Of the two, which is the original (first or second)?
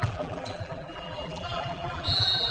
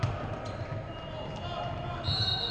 second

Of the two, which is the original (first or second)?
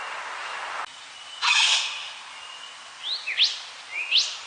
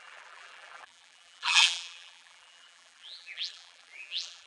first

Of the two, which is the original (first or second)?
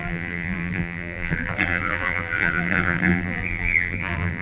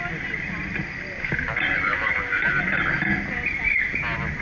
second